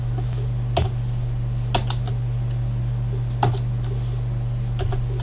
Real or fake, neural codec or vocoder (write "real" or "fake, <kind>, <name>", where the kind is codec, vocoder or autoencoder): real